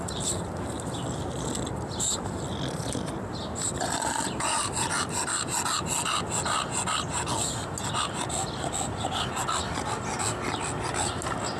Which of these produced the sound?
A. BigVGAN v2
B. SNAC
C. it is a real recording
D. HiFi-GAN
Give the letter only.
C